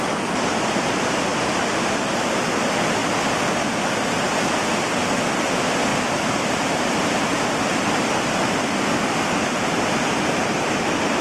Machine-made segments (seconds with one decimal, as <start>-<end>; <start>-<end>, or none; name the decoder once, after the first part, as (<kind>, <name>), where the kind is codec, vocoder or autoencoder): 5.9-11.2 (vocoder, BigVGAN v2)